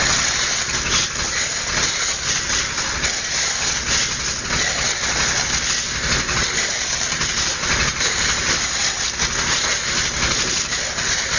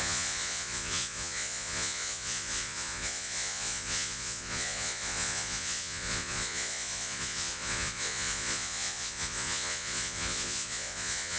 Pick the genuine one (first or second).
first